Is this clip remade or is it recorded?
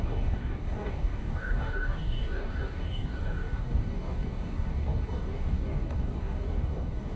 remade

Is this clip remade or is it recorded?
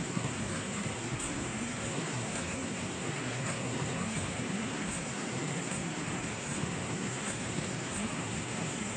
remade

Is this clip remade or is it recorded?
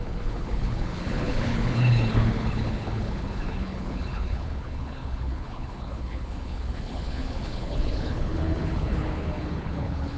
remade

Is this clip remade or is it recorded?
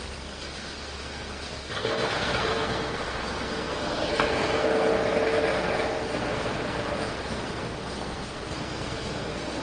remade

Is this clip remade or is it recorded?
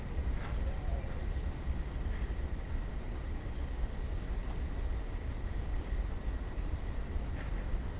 recorded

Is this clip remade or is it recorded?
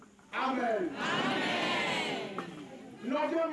recorded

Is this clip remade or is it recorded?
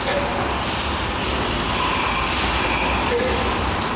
recorded